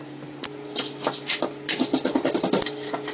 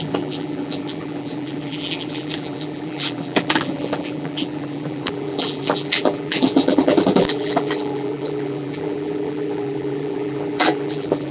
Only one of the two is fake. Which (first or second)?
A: second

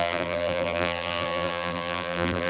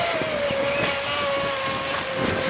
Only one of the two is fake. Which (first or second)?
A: first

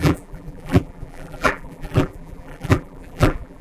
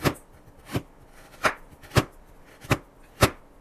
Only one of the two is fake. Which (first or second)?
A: first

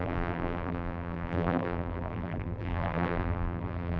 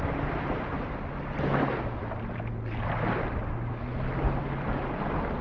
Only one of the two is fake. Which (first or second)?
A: first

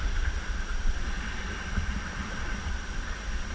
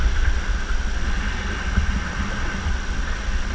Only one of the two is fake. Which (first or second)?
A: first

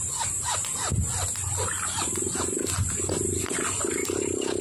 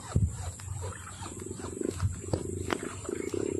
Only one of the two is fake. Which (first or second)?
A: second